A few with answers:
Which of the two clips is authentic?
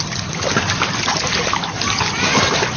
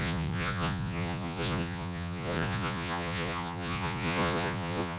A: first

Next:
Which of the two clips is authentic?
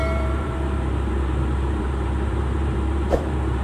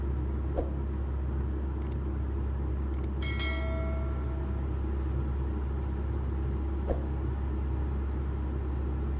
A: second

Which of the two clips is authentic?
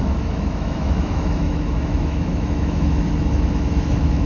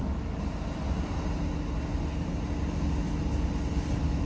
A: second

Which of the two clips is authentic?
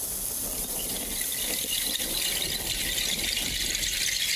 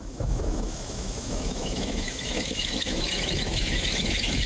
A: first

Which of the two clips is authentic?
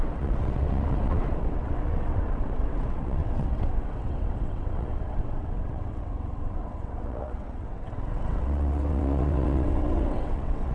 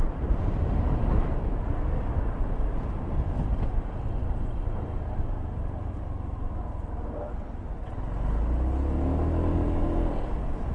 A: second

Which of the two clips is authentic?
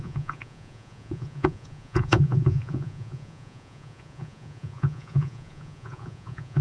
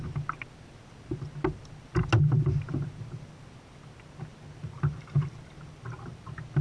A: second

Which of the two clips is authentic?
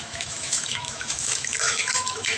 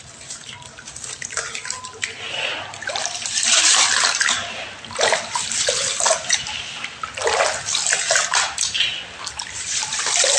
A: second